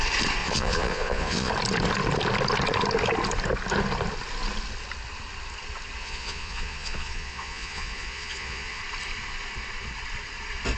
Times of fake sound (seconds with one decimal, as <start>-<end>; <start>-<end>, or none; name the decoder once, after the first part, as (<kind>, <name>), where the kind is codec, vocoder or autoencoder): 0.4-1.5 (vocoder, Vocos); 6.0-8.8